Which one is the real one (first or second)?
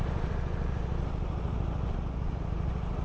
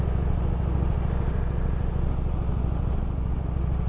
second